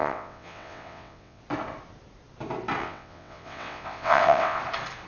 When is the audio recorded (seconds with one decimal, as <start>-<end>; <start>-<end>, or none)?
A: 1.4-2.8; 4.6-5.1